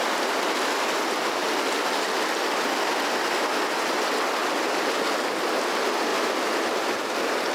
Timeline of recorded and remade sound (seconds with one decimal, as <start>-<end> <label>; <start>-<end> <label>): 0.0-1.4 recorded; 1.4-2.3 remade; 2.3-7.5 recorded